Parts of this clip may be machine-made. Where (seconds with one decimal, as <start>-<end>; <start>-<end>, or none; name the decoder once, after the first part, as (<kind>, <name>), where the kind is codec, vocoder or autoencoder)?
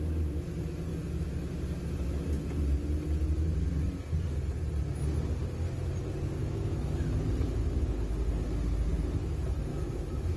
0.9-1.5 (autoencoder, DAC-VAE); 6.4-6.9; 7.6-8.1; 9.7-10.4